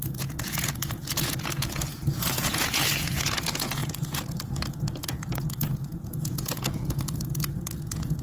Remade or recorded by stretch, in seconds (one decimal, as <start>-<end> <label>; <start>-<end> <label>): 0.0-8.2 remade